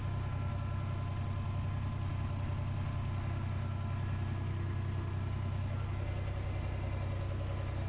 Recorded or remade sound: recorded